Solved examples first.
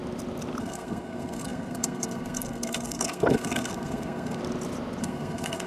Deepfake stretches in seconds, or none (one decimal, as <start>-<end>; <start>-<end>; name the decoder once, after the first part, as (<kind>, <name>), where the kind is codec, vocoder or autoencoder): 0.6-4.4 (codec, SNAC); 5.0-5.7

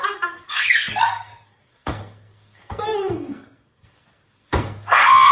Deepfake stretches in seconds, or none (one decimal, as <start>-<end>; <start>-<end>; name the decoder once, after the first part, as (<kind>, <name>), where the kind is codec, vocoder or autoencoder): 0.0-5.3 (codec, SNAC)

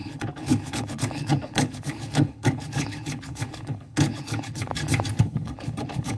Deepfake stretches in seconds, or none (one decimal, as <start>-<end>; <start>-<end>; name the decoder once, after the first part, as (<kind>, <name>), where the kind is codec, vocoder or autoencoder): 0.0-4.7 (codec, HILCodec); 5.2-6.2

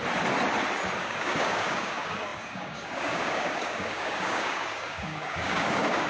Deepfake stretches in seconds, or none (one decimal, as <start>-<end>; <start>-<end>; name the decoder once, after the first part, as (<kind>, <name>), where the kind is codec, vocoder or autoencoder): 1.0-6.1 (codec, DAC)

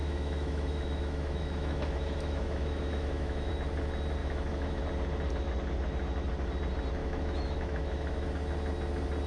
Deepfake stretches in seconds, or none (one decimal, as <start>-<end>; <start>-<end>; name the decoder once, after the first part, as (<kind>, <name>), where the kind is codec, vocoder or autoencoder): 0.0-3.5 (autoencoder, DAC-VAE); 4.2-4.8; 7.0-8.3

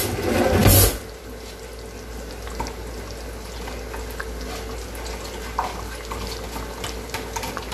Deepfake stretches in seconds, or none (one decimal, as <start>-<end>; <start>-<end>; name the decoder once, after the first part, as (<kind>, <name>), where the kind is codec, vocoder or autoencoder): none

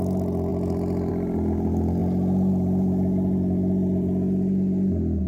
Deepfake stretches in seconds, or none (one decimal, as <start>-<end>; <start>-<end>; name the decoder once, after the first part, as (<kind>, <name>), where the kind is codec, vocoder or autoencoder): none